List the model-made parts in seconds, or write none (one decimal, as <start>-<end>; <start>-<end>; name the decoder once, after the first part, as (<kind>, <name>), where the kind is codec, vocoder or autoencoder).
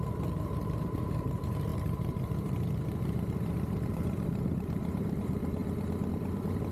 0.0-5.6 (vocoder, BigVGAN v2); 6.1-6.7